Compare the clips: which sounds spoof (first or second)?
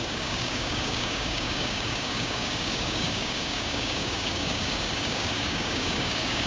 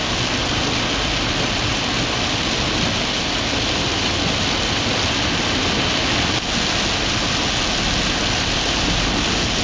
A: first